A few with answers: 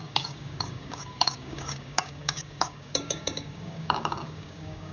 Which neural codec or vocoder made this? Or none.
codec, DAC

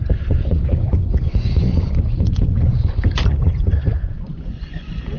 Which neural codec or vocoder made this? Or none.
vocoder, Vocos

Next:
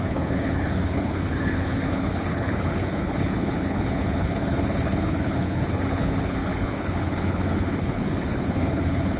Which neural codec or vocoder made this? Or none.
codec, HILCodec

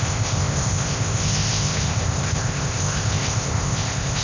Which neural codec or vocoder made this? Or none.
codec, ZipCodec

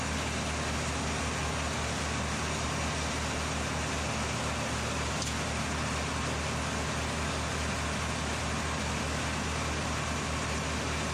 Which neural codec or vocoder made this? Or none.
none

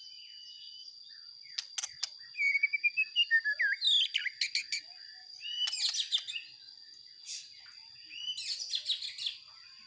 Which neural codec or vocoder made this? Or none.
none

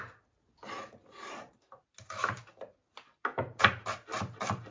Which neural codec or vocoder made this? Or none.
none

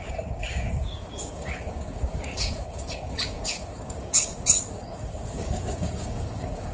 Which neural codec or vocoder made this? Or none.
codec, DAC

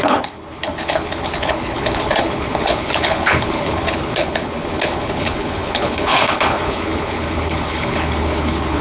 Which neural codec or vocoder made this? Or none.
codec, HILCodec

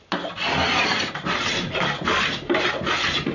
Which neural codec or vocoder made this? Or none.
none